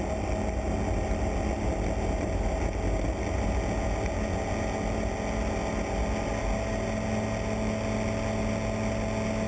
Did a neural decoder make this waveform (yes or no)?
no